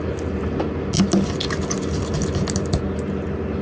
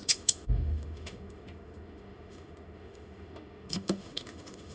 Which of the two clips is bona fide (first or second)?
first